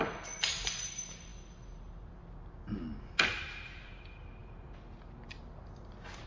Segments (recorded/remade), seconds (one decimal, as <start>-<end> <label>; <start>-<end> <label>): 0.0-6.3 recorded